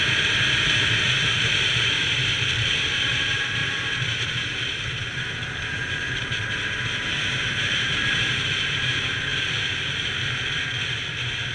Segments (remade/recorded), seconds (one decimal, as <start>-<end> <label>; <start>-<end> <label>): 0.0-2.2 remade; 2.2-2.9 recorded; 2.9-9.3 remade; 9.3-11.1 recorded; 11.1-11.5 remade